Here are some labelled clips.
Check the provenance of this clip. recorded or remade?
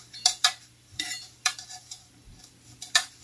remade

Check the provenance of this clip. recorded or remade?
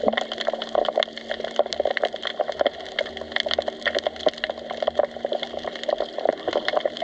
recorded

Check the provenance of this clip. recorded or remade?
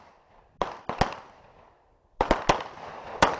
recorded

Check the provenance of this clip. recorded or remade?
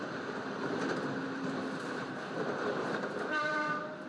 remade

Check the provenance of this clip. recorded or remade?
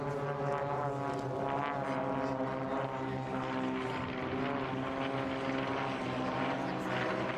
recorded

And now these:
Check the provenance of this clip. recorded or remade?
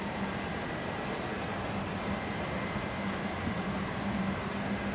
remade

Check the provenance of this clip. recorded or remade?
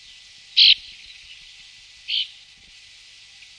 recorded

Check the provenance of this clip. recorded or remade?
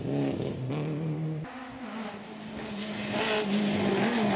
recorded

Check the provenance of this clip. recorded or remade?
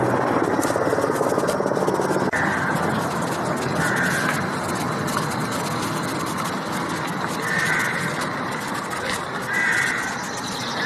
recorded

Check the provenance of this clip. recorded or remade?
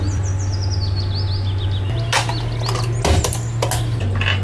recorded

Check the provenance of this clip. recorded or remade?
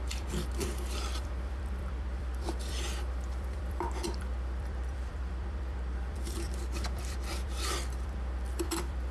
remade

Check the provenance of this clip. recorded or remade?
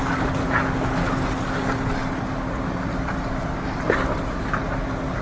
recorded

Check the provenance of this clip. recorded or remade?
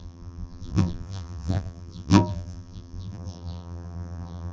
remade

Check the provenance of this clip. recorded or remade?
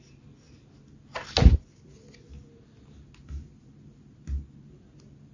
recorded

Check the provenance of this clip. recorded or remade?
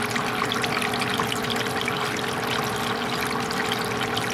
recorded